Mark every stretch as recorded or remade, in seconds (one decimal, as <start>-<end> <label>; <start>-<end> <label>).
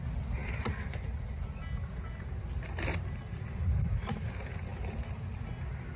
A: 0.0-6.0 recorded